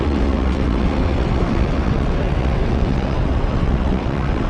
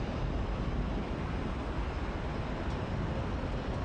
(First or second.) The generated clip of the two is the first